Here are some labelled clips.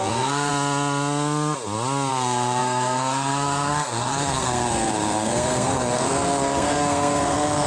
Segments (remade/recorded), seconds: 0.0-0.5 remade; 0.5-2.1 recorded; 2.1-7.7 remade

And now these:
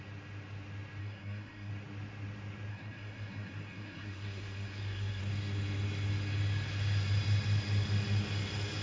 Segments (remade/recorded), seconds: 0.0-1.0 recorded; 1.0-1.7 remade; 1.7-2.7 recorded; 2.7-5.2 remade; 5.2-8.8 recorded

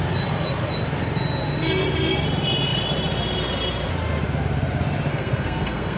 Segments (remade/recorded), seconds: 0.0-5.1 recorded; 5.1-6.0 remade

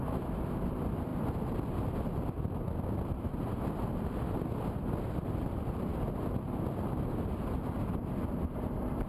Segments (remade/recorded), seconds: 0.0-9.1 recorded

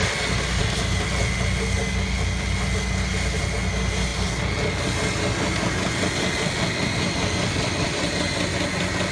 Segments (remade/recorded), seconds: 0.0-9.1 recorded